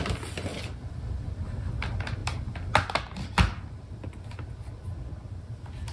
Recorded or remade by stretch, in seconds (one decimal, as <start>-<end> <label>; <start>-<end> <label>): 0.0-5.9 recorded